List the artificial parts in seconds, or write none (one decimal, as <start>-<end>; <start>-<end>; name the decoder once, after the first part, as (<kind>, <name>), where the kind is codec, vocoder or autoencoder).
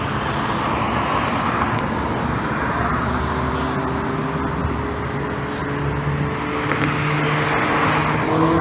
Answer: none